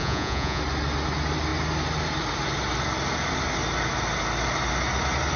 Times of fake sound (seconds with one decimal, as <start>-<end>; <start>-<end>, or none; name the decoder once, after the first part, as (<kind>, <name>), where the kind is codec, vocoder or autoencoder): 0.0-0.6 (vocoder, Vocos)